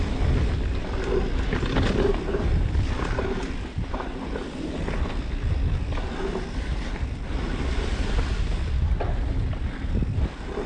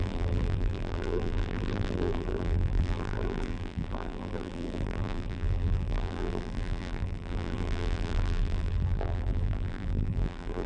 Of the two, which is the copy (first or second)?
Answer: second